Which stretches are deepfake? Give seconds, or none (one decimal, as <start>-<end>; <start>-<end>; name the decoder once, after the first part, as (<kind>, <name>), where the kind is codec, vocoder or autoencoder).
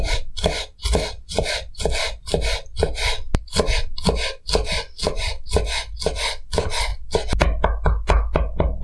none